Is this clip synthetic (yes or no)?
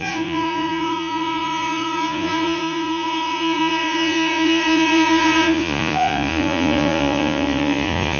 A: yes